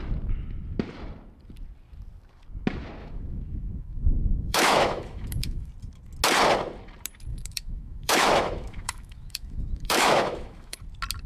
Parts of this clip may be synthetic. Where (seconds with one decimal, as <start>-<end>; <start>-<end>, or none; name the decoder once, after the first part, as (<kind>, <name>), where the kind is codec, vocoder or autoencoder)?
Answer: 3.0-5.7 (autoencoder, DAC-VAE); 7.3-10.8